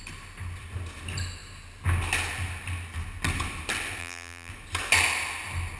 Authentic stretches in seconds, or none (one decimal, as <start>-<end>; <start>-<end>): 0.0-4.0; 4.5-5.8

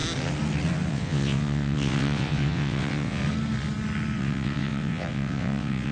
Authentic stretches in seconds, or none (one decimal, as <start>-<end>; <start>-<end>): 0.0-0.9; 3.2-4.2

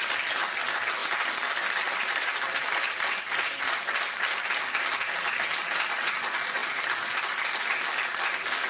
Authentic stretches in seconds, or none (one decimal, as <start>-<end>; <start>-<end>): 0.0-8.7

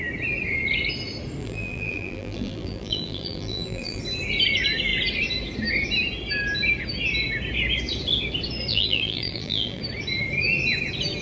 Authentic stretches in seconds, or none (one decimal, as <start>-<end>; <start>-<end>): 0.0-1.4; 4.0-8.7; 9.8-11.2

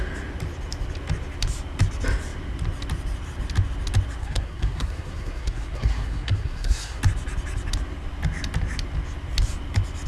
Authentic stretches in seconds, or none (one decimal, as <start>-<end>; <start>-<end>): 0.0-4.2; 7.0-10.1